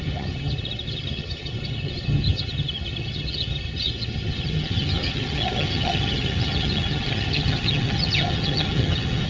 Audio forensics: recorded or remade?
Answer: remade